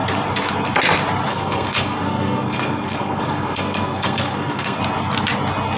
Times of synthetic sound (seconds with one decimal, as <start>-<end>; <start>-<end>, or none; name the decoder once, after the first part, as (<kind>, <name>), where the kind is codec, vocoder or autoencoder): 1.3-4.8 (codec, SNAC)

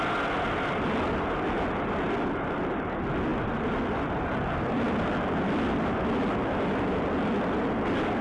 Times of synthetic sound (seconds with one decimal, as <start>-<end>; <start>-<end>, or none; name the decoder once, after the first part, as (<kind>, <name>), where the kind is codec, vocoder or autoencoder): none

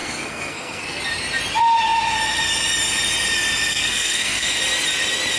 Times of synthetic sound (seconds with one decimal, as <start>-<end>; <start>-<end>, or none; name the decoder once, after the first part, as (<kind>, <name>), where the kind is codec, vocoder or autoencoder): 0.0-1.0 (codec, SNAC); 3.7-4.6

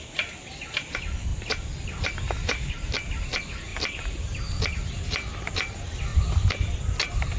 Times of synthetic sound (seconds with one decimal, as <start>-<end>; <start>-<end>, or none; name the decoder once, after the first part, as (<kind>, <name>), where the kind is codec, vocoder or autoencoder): none

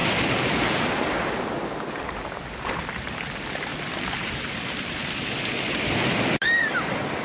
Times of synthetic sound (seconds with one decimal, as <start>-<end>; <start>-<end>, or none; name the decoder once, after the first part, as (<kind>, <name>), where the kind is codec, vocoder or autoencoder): none

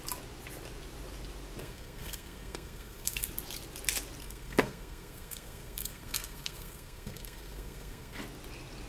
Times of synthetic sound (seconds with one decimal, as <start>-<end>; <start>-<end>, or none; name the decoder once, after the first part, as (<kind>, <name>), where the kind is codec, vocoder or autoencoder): 1.6-3.3 (codec, SNAC); 4.2-8.2

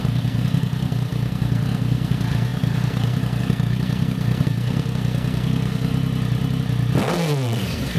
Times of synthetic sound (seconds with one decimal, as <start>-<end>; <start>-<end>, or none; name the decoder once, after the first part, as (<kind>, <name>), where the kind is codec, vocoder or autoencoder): 0.0-5.9 (codec, SNAC); 7.0-8.0